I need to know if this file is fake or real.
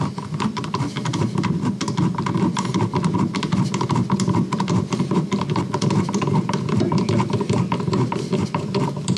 fake